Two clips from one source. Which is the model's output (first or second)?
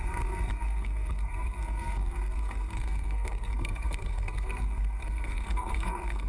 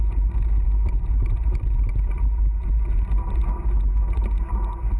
first